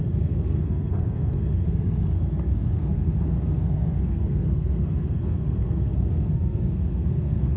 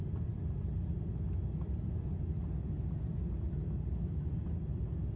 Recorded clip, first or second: second